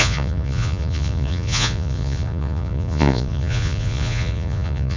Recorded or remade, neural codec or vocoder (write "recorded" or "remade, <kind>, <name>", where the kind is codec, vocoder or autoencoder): remade, vocoder, Vocos